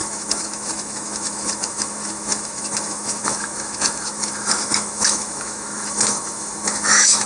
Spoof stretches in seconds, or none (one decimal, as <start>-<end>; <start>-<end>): 0.0-7.3